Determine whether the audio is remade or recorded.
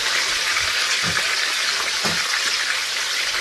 recorded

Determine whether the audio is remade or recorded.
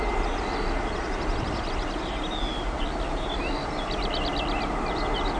recorded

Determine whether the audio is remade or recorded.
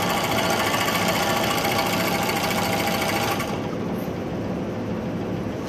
recorded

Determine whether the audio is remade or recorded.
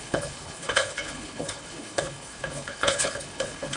remade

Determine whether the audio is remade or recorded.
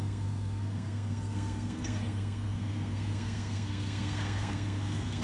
remade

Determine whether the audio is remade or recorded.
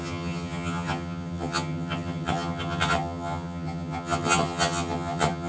remade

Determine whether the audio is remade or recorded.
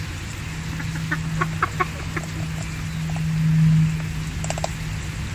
recorded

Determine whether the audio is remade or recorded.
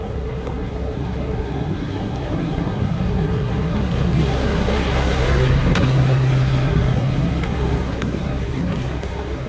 remade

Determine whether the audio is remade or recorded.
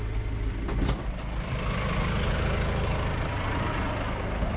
recorded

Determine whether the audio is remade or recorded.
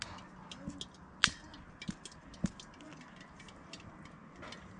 recorded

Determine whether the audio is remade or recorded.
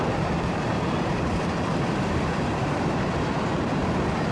remade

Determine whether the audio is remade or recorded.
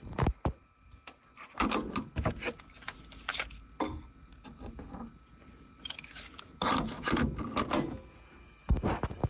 recorded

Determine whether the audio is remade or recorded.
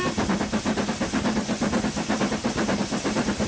recorded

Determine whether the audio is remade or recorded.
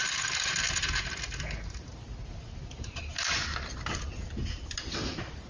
recorded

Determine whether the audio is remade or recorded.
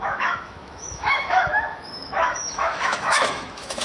remade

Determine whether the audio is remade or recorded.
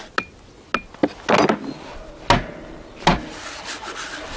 recorded